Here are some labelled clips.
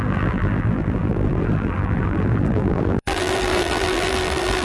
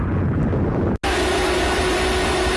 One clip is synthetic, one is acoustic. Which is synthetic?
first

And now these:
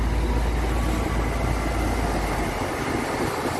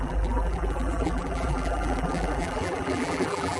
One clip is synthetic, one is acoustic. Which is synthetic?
second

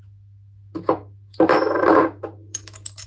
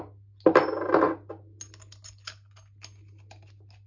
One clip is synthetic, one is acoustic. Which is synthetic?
first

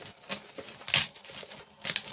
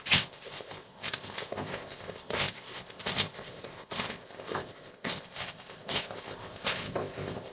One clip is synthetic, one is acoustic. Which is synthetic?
second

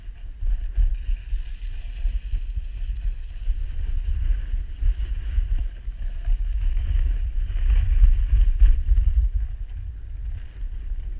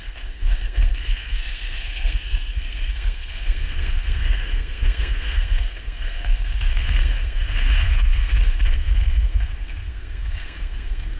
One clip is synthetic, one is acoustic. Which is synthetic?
second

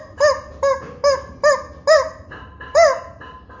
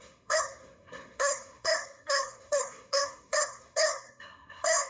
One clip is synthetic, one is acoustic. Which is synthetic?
second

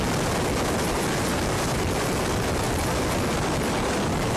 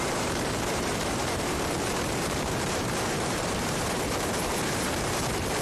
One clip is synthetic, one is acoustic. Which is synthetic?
second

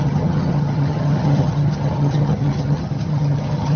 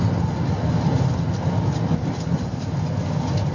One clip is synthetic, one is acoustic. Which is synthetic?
first